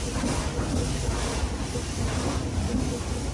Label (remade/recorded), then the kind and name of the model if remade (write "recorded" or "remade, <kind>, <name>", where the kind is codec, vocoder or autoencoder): recorded